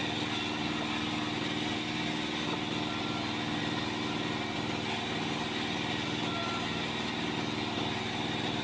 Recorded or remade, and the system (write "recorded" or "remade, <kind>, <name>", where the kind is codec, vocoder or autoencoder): recorded